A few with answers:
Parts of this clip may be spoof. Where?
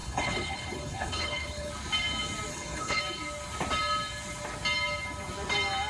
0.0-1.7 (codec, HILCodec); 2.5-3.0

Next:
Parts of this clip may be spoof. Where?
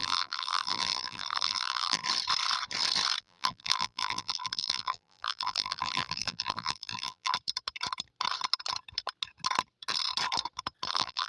0.0-2.0 (vocoder, BigVGAN v2); 3.2-7.3; 10.9-11.3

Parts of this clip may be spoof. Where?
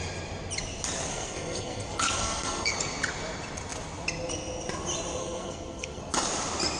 1.1-2.7 (codec, SNAC); 5.2-6.0